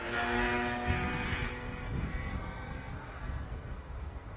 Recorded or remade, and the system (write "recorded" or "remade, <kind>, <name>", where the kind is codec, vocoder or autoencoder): remade, codec, SNAC